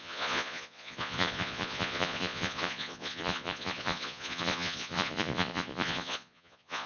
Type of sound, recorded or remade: remade